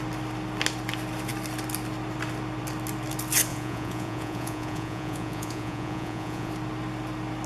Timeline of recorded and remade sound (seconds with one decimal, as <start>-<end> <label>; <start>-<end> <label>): 0.0-3.5 recorded; 3.5-6.5 remade; 6.5-7.5 recorded